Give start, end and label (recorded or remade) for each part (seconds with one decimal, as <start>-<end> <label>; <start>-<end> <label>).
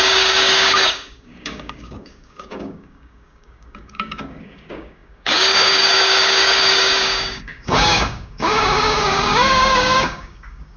0.0-10.8 remade